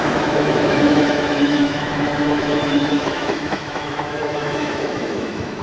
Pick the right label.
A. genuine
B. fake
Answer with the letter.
B